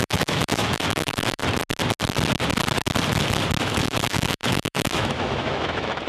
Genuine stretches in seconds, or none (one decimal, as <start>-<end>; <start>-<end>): 1.4-3.6